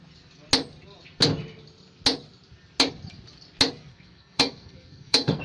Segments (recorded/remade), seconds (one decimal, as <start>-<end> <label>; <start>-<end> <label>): 0.0-3.9 recorded; 3.9-5.4 remade